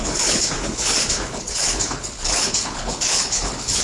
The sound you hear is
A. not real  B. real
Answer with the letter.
A